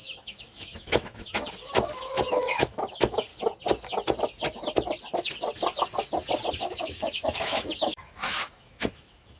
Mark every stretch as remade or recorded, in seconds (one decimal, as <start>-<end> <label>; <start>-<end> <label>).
0.0-3.3 remade; 3.3-6.5 recorded; 6.5-9.4 remade